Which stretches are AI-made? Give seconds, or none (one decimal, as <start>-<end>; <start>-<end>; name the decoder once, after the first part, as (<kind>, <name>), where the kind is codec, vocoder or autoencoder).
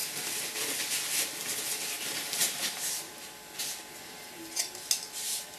none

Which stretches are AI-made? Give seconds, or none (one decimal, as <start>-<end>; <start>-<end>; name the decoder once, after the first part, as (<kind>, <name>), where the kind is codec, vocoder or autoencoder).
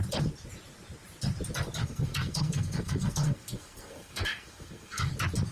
1.8-5.1 (codec, SNAC)